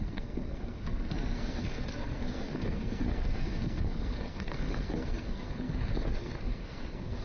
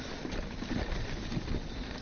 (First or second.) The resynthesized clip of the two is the first